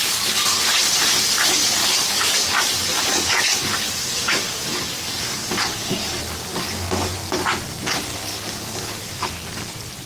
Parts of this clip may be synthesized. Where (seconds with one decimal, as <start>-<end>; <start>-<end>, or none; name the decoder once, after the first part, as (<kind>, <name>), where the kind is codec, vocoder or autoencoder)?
0.0-0.6 (codec, DAC); 1.8-5.9; 6.5-7.1; 8.3-9.3